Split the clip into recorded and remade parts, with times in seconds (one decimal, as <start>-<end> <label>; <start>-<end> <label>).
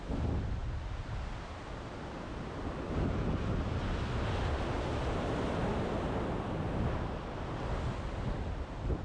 0.0-9.0 recorded